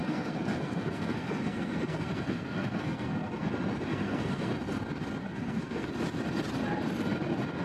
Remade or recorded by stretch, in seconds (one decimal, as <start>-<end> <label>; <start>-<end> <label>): 0.0-3.5 remade; 3.5-3.9 recorded; 3.9-4.5 remade; 4.5-5.2 recorded; 5.2-5.9 remade; 5.9-7.6 recorded